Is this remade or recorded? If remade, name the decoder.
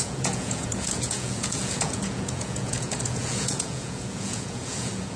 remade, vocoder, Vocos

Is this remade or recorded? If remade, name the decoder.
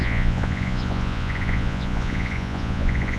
remade, vocoder, Vocos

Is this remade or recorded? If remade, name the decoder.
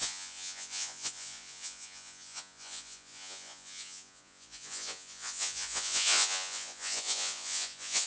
remade, vocoder, Vocos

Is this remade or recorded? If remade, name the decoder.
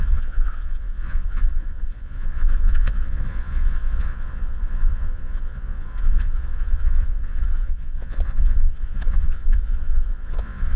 remade, vocoder, Vocos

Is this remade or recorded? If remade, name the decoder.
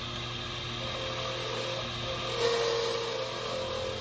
recorded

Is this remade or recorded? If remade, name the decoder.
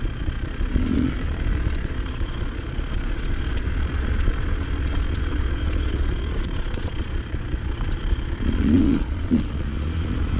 remade, vocoder, Vocos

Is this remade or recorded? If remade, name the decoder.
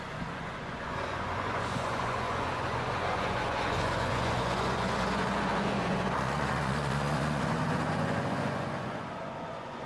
remade, vocoder, Vocos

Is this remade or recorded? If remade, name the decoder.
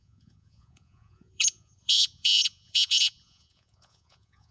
remade, vocoder, Vocos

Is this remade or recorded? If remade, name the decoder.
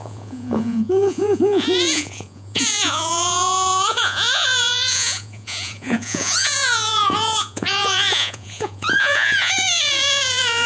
remade, vocoder, Vocos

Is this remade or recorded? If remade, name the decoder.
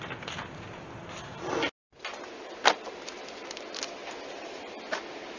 recorded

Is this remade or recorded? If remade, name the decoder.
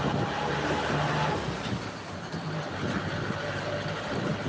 recorded